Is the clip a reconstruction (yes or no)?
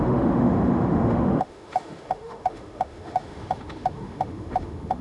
yes